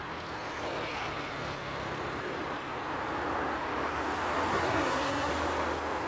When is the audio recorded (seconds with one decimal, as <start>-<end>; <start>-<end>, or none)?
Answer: 0.0-4.5; 5.3-6.1